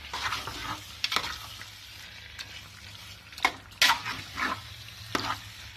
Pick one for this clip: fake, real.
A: real